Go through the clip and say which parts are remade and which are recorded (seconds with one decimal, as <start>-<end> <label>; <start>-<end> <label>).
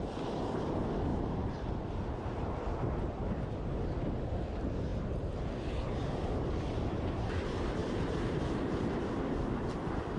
0.0-1.1 recorded; 1.1-2.5 remade; 2.5-7.8 recorded; 7.8-8.4 remade; 8.4-10.2 recorded